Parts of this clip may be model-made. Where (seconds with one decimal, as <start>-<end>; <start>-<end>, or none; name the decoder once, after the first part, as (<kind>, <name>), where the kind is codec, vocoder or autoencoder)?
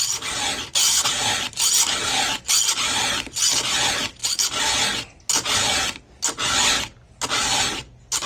0.8-1.3 (vocoder, Vocos)